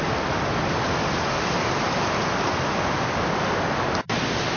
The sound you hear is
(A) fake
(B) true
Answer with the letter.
B